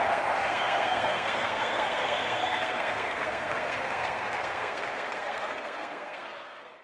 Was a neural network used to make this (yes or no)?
yes